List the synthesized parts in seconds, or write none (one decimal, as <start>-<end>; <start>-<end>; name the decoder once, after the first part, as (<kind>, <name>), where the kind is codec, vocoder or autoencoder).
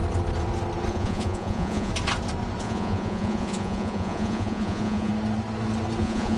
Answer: 0.9-1.9 (vocoder, Vocos); 2.6-5.1; 6.0-6.4